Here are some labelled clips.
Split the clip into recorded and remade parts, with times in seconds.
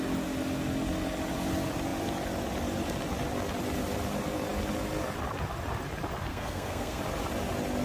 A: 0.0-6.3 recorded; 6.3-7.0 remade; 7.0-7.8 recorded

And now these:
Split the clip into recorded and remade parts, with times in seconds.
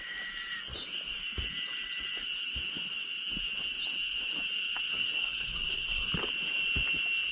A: 0.0-4.9 recorded; 4.9-6.1 remade; 6.1-7.3 recorded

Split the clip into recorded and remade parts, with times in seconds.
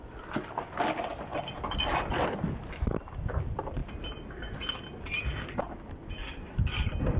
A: 0.0-7.2 recorded